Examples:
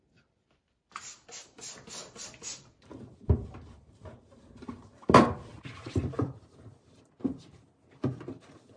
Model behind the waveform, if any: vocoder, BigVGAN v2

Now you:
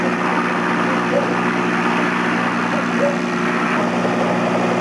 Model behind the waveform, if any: none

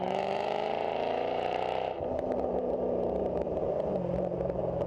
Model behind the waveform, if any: vocoder, BigVGAN v2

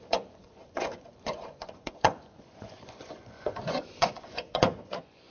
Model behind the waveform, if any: vocoder, Vocos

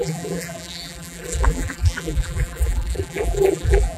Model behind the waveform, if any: vocoder, BigVGAN v2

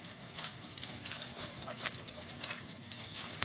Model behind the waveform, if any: codec, SNAC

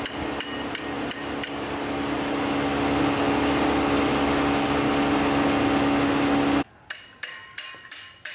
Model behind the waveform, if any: none